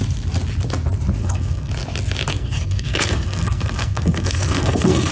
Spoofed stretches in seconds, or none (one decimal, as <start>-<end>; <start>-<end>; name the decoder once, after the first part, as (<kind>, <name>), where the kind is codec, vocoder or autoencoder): 1.2-1.7 (codec, SNAC); 2.3-5.1